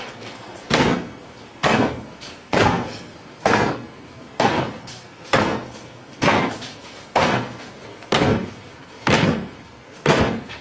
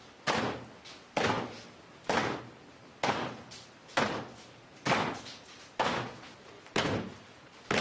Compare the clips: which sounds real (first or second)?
second